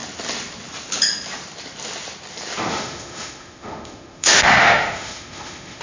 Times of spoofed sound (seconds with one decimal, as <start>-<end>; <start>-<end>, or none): 2.7-5.8